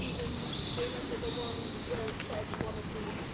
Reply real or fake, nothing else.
fake